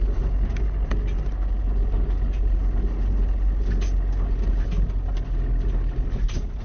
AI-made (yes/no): no